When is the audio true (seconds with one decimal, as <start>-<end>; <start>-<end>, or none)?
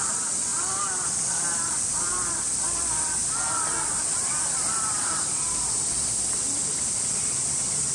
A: none